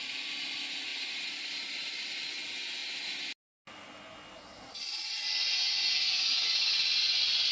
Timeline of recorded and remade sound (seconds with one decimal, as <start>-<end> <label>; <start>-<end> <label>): 0.0-0.9 recorded; 0.9-2.3 remade; 2.3-7.5 recorded